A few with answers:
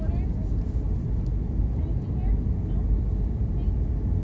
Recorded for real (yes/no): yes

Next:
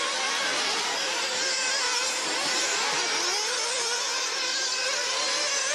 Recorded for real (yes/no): yes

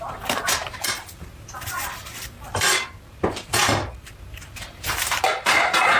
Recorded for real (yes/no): no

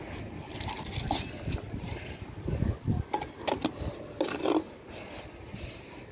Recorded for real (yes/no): yes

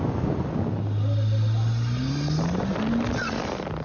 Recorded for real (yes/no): yes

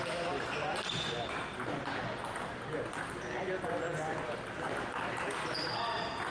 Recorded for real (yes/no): yes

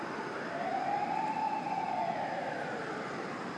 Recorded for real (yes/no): no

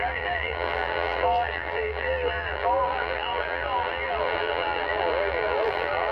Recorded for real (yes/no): no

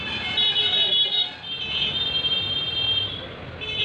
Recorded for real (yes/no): yes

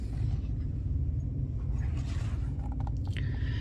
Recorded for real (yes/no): yes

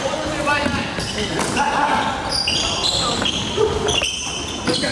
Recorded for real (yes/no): no